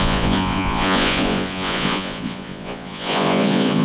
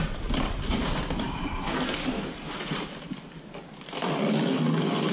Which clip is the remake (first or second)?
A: first